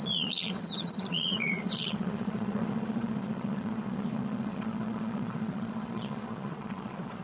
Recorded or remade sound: remade